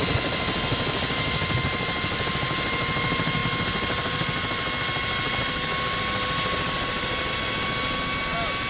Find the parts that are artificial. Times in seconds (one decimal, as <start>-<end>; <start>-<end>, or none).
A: none